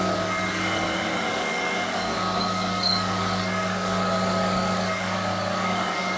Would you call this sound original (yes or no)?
no